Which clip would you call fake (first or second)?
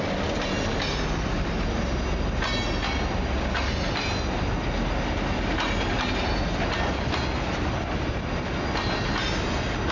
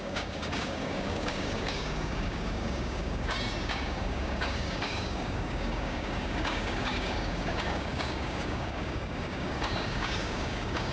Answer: second